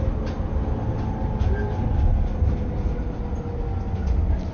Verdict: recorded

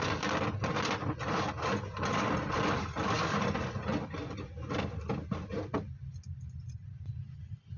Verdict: recorded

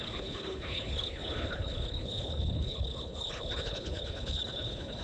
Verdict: remade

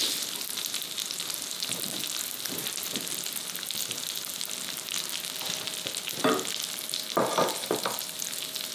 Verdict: recorded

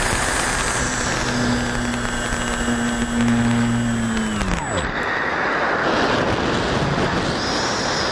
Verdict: recorded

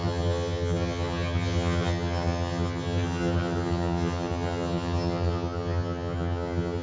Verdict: remade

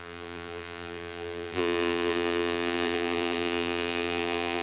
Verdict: remade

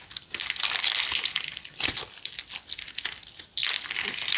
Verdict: recorded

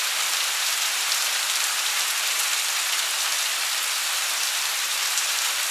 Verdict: remade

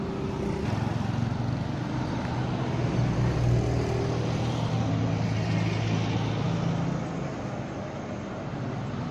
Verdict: recorded